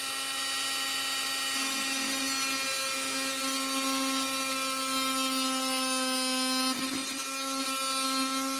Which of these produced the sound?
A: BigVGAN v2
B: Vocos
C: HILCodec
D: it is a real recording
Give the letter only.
D